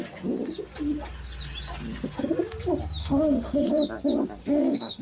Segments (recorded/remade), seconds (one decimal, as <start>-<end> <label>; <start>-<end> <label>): 0.0-3.0 recorded; 3.0-3.7 remade; 3.7-4.4 recorded; 4.4-5.0 remade